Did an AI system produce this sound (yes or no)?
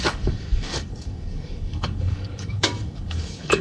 yes